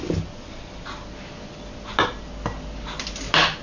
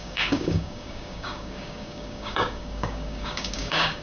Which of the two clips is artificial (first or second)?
second